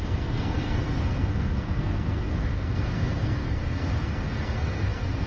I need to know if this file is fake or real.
fake